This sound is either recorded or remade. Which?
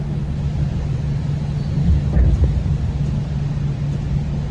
recorded